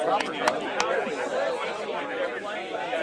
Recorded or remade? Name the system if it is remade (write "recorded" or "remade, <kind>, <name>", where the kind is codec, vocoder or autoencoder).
recorded